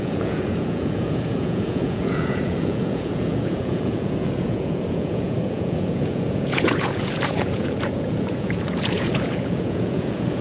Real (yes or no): no